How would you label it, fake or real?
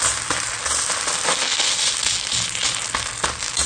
real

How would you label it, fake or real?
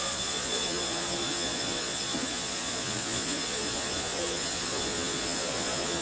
fake